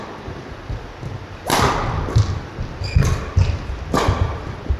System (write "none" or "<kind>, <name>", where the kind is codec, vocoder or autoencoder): vocoder, BigVGAN v2